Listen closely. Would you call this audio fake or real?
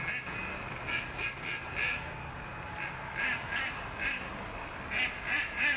real